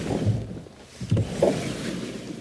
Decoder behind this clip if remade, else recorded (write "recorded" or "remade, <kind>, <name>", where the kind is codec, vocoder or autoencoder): recorded